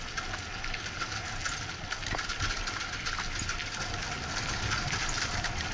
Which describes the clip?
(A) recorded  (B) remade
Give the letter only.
A